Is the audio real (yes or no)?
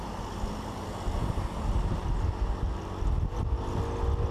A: yes